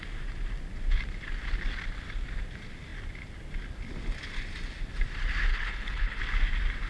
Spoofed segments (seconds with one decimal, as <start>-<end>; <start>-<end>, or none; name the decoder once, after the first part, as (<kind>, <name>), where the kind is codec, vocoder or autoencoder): 5.5-6.2 (codec, HILCodec)